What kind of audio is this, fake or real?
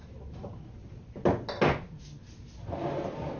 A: real